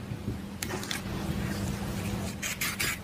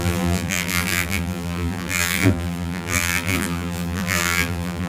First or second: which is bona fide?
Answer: first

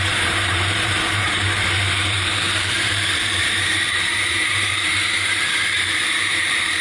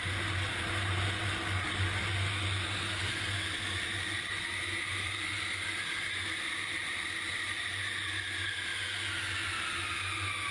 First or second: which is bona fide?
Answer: second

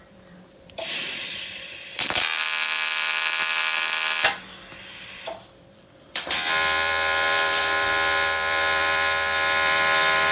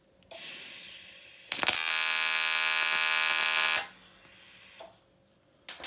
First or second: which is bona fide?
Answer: second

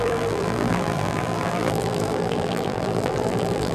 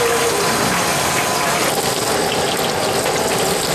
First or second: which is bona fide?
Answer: second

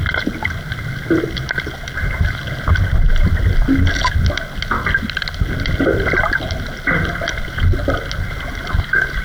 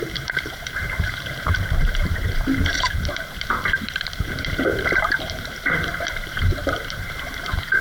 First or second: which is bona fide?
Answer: first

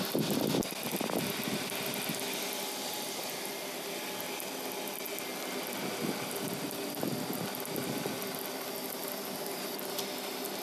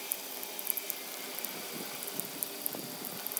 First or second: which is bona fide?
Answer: first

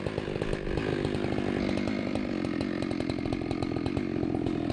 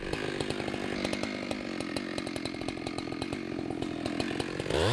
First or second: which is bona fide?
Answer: second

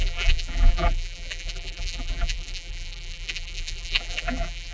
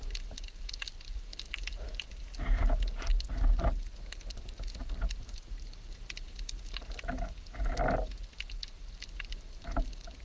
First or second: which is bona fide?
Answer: second